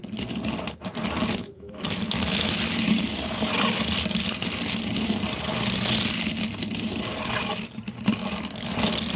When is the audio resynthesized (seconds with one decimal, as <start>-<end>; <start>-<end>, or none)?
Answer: 1.4-2.5